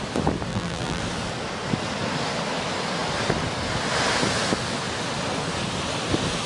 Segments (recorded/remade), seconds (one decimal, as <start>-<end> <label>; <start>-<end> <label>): 0.0-0.5 recorded; 0.5-1.0 remade; 1.0-6.5 recorded